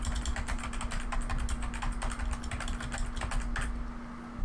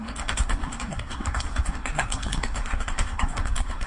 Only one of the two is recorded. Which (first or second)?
first